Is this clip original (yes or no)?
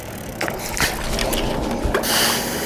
yes